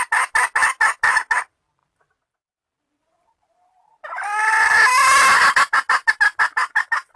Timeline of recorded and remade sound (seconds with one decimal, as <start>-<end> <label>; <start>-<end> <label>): 0.0-7.2 recorded